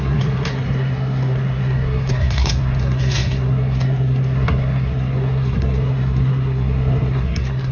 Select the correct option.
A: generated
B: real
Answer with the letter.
A